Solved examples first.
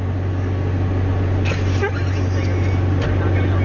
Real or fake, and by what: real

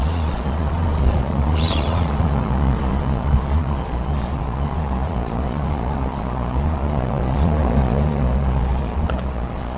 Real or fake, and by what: fake, vocoder, Vocos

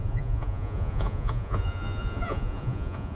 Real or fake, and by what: fake, vocoder, Vocos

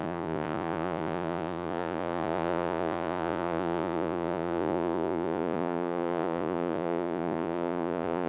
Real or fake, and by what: fake, vocoder, Vocos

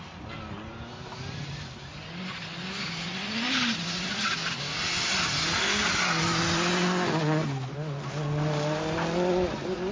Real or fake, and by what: real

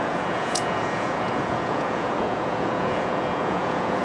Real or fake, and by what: fake, vocoder, Vocos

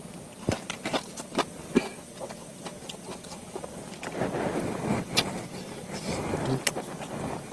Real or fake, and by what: real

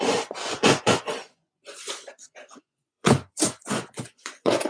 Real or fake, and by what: fake, vocoder, Vocos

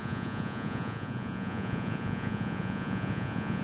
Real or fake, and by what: fake, vocoder, Vocos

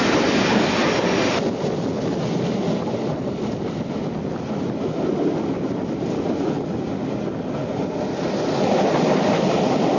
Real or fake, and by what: real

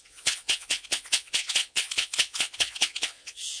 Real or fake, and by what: fake, vocoder, Vocos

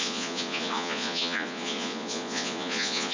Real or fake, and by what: fake, vocoder, Vocos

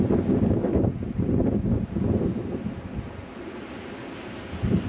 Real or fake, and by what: real